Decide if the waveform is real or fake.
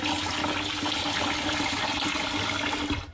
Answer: real